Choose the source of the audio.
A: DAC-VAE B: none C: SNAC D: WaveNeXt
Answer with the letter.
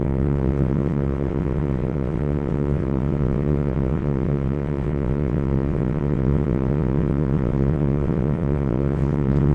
D